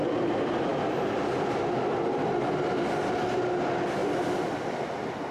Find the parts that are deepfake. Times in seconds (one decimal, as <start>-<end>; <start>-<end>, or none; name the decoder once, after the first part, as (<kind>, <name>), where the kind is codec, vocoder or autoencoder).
0.7-2.5 (vocoder, BigVGAN v2)